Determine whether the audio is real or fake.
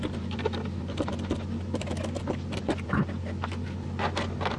real